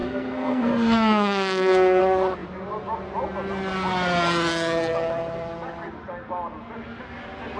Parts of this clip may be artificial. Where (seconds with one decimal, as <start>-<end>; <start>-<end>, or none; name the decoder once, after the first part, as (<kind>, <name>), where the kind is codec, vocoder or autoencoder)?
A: 0.0-2.0 (codec, SNAC)